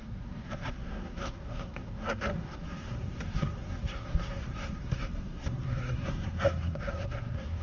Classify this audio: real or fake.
fake